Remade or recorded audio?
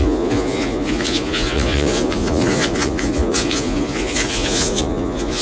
remade